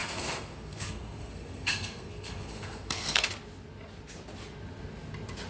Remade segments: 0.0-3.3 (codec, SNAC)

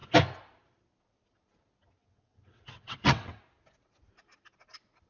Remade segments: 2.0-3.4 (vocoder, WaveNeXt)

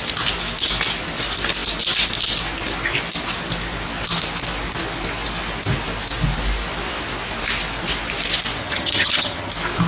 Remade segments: 8.6-9.5 (vocoder, HiFi-GAN)